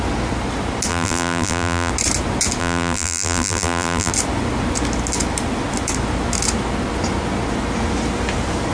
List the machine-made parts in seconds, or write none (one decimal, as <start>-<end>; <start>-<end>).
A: 0.9-1.9; 2.6-4.1